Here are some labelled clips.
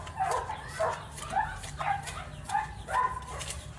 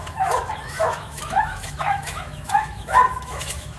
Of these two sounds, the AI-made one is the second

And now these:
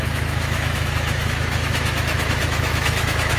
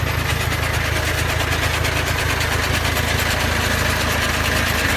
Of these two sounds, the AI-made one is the first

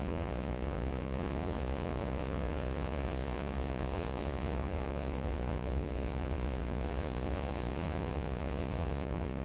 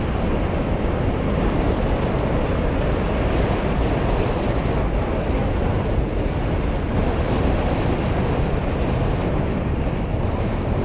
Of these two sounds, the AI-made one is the first